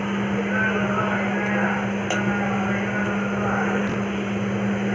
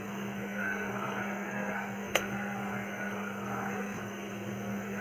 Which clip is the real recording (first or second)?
first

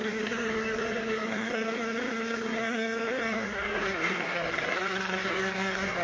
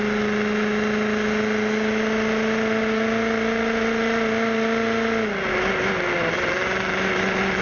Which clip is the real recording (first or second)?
second